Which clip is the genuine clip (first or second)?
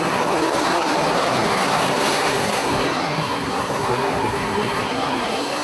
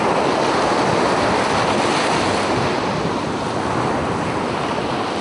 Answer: second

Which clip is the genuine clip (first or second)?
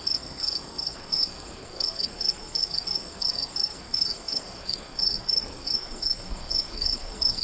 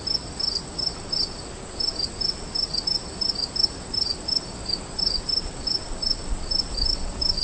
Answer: second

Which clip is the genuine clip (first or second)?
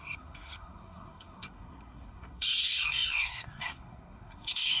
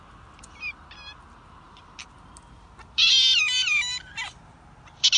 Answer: second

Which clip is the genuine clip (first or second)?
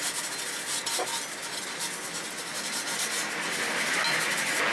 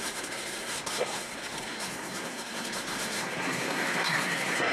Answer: first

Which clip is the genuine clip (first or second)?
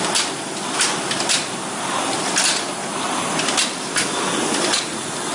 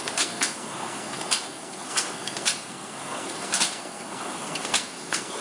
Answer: first